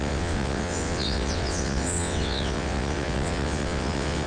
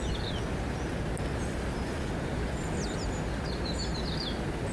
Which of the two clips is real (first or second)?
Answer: second